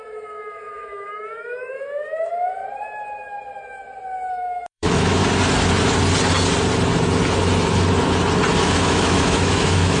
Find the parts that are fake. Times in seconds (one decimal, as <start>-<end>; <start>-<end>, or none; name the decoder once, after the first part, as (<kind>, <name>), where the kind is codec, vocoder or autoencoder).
0.0-2.6 (autoencoder, DAC-VAE); 4.3-5.2; 8.6-10.0